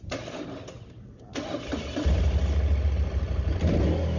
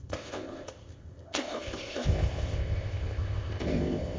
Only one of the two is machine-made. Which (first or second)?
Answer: second